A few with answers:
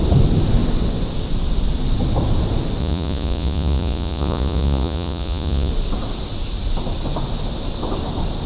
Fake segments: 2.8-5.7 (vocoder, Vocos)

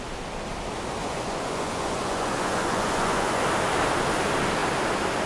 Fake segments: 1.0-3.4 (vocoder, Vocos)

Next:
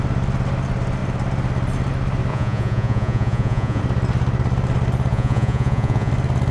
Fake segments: 2.3-3.8 (vocoder, Vocos); 5.1-6.1

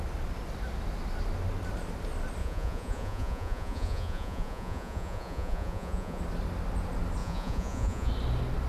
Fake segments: 2.4-6.2 (vocoder, Vocos); 7.2-8.1

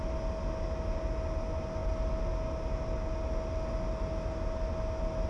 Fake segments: none

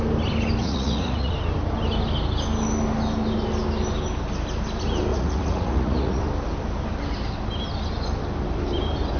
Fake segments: 0.6-1.3 (vocoder, Vocos); 5.1-6.2